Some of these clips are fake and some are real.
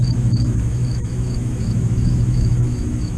fake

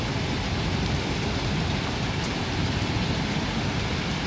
real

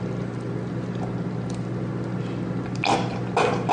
real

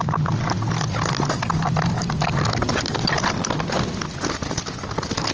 real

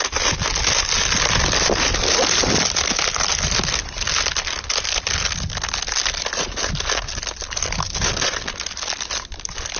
real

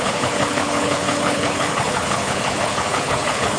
fake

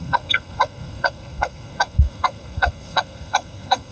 fake